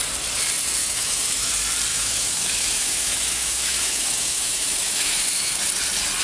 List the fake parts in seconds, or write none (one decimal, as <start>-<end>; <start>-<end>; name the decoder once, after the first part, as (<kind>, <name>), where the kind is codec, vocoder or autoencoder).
0.8-1.5 (autoencoder, DAC-VAE); 1.9-5.6